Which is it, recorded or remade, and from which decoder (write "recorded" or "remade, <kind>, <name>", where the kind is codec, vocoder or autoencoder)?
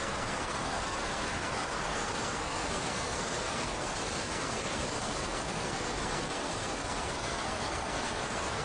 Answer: remade, codec, SNAC